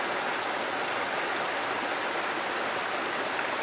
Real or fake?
real